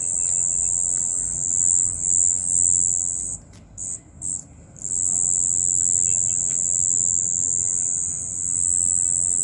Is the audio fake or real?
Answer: real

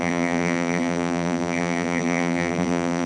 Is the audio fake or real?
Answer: fake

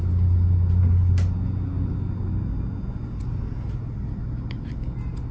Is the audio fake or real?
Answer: real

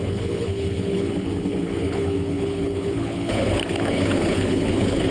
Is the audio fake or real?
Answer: fake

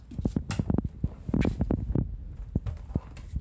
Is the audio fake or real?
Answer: real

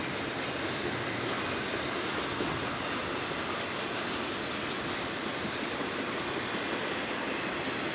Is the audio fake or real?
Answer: real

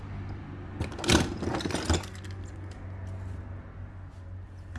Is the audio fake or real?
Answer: real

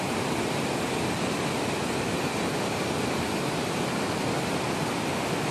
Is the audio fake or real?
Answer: real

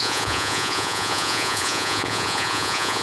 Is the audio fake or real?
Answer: fake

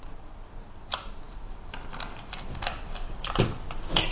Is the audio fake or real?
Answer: real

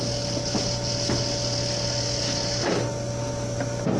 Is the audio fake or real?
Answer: real